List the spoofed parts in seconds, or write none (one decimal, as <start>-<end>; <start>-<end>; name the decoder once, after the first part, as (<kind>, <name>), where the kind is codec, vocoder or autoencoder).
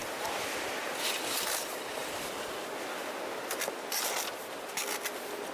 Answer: 0.0-0.7 (vocoder, BigVGAN v2)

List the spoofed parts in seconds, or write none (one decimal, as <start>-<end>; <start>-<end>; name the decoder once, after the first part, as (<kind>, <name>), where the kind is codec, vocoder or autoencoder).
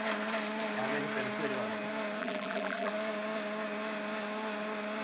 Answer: 2.2-2.9 (vocoder, BigVGAN v2)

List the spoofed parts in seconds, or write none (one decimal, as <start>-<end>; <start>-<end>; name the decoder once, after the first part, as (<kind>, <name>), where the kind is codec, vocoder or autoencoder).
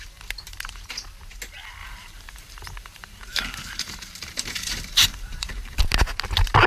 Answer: 1.8-5.8 (vocoder, BigVGAN v2)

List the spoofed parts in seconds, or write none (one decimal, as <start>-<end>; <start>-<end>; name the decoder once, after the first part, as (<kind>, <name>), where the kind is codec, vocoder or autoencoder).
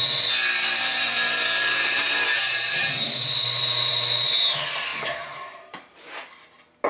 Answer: 0.9-3.9 (vocoder, BigVGAN v2); 4.9-6.2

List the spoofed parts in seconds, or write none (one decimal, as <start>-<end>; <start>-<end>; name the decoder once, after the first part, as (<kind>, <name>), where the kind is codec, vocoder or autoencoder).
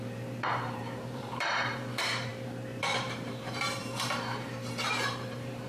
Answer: 0.0-2.3 (vocoder, BigVGAN v2); 2.8-5.7